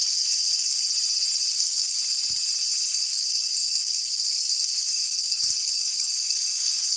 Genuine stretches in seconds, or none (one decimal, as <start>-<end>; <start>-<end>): 0.8-1.5; 2.0-2.7